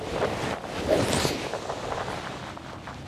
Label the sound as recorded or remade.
recorded